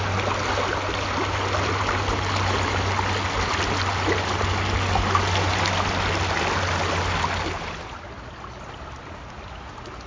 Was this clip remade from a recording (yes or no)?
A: no